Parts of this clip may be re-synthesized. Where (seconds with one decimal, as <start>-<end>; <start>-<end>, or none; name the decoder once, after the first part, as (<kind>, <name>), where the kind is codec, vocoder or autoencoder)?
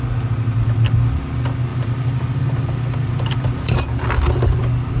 1.7-4.6 (vocoder, BigVGAN v2)